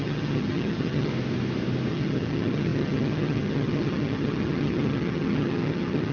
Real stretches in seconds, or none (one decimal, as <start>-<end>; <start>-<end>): 1.1-1.9